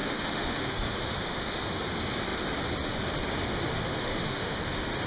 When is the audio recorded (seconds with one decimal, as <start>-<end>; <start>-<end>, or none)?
1.4-3.7; 4.6-5.1